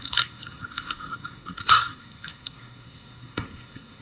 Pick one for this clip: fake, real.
fake